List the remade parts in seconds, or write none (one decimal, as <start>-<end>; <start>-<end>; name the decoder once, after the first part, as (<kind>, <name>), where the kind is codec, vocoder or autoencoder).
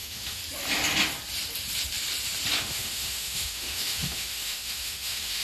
0.0-0.4 (autoencoder, DAC-VAE); 2.6-5.4